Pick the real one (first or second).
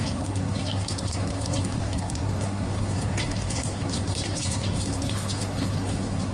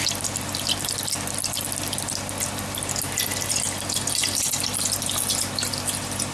second